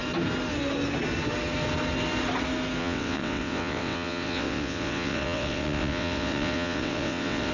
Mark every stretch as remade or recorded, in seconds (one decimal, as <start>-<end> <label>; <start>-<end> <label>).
0.0-2.8 recorded; 2.8-7.5 remade